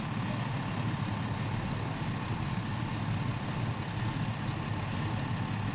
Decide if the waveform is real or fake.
real